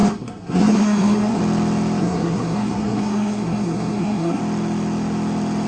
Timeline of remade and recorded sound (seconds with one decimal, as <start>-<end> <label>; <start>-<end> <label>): 0.0-1.4 remade; 1.4-2.0 recorded; 2.0-4.4 remade; 4.4-5.7 recorded